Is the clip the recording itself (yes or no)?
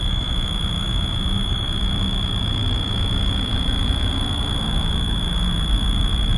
no